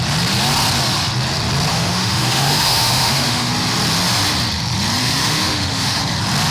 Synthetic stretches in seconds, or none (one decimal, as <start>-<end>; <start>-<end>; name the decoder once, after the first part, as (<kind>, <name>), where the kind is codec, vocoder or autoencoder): 1.7-3.5 (autoencoder, DAC-VAE); 5.0-6.0